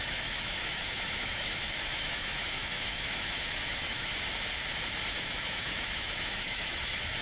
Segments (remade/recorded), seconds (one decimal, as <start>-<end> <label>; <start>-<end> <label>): 0.0-4.1 remade; 4.1-5.1 recorded; 5.1-7.2 remade